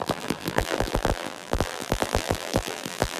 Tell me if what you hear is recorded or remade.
remade